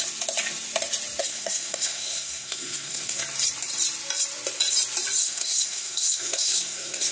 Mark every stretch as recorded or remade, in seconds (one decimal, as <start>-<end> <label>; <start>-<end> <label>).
0.0-1.2 recorded; 1.2-3.2 remade; 3.2-5.2 recorded; 5.2-7.1 remade